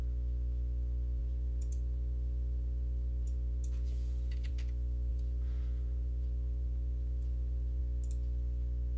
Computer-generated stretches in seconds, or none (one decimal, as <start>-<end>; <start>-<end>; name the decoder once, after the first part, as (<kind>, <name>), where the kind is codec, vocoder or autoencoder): 1.2-4.5 (vocoder, Vocos); 5.1-7.8